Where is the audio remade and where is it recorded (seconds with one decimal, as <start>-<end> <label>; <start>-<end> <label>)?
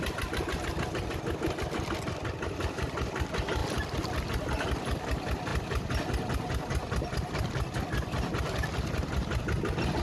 0.0-3.6 recorded; 3.6-4.2 remade; 4.2-5.5 recorded; 5.5-7.8 remade; 7.8-10.0 recorded